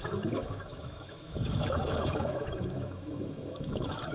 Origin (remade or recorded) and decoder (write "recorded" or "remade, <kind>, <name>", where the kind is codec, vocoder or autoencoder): remade, autoencoder, DAC-VAE